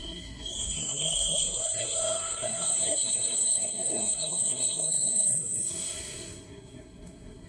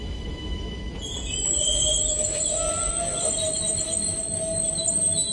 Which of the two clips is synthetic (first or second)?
first